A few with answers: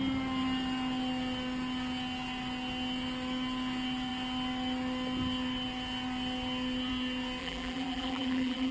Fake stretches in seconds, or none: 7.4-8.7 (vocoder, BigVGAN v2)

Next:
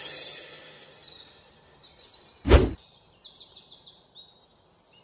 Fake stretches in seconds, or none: 1.0-4.0 (vocoder, BigVGAN v2)

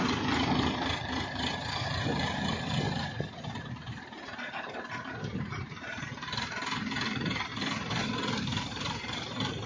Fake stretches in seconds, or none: 0.0-7.5 (vocoder, BigVGAN v2); 8.0-9.7

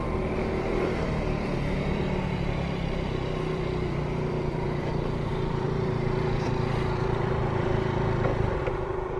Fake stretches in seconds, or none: 0.0-9.2 (vocoder, BigVGAN v2)

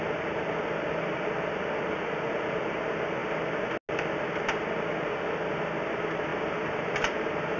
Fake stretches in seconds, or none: 6.3-7.6 (vocoder, BigVGAN v2)

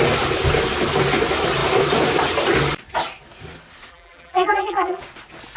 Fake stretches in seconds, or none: 3.9-5.0 (vocoder, BigVGAN v2)

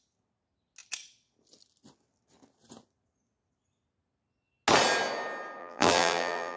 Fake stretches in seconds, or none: 5.6-6.6 (vocoder, BigVGAN v2)

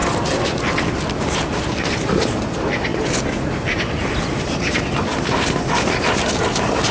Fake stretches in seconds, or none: none